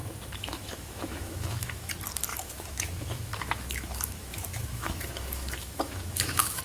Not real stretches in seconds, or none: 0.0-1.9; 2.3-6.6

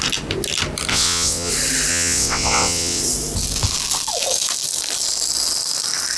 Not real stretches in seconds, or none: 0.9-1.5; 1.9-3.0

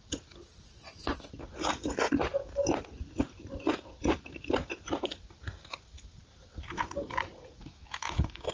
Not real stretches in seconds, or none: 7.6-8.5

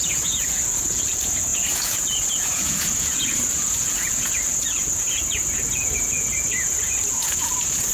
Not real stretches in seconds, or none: 0.0-7.9

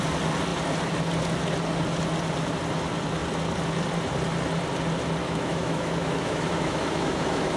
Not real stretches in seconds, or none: 5.2-7.6